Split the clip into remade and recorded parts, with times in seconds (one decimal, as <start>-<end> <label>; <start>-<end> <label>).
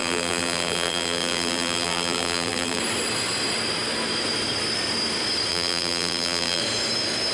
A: 0.0-2.8 remade; 2.8-5.5 recorded; 5.5-6.6 remade; 6.6-7.3 recorded